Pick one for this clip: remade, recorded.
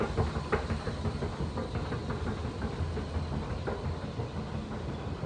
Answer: recorded